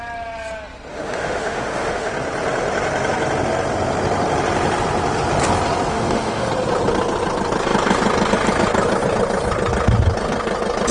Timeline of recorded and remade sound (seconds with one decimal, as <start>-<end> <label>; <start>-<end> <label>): 0.0-0.9 recorded; 0.9-2.1 remade; 2.1-5.9 recorded; 5.9-6.5 remade; 6.5-10.9 recorded